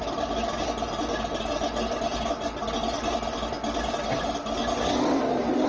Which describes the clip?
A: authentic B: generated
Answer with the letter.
A